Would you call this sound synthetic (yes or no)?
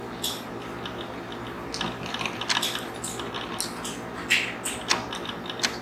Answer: no